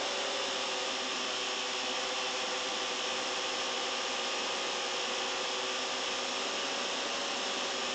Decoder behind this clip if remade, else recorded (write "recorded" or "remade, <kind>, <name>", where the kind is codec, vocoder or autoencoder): recorded